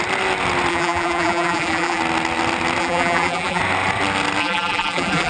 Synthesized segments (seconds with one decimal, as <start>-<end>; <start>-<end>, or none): 0.7-2.0; 2.8-3.6; 4.4-5.3